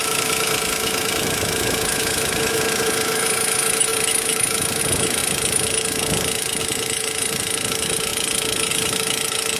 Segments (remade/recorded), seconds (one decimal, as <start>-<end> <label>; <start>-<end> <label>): 0.0-9.6 remade